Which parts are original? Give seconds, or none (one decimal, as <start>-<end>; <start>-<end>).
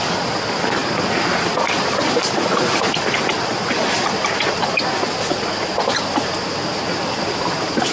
0.0-7.9